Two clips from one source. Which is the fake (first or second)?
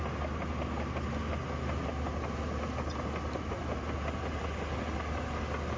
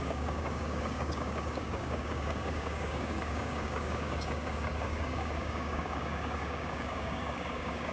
second